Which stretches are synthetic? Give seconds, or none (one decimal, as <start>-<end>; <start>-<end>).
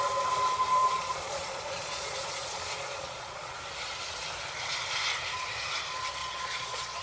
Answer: 0.8-3.6; 6.2-7.0